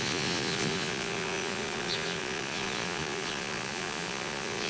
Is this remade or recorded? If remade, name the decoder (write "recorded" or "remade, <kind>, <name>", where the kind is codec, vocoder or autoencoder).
remade, vocoder, Vocos